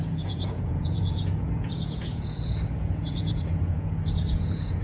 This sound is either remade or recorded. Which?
remade